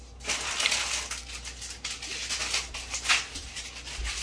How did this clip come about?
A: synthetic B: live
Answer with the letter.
B